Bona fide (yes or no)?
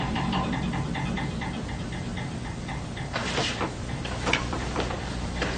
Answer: no